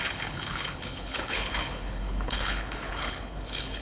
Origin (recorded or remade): remade